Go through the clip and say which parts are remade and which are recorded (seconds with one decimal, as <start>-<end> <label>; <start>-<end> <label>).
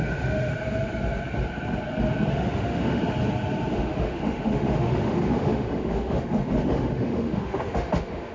0.0-0.5 remade; 0.5-2.3 recorded; 2.3-3.0 remade; 3.0-3.7 recorded; 3.7-8.3 remade